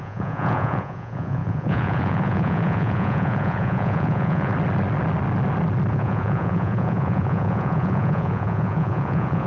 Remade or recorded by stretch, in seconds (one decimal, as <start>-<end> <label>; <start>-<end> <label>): 0.0-4.5 remade; 4.5-5.9 recorded; 5.9-9.5 remade